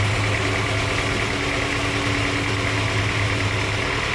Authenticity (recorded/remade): recorded